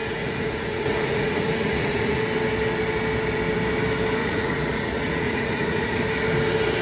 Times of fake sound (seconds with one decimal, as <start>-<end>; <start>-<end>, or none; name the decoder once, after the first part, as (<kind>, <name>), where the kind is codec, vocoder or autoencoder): 0.0-2.2 (vocoder, Vocos); 4.2-6.0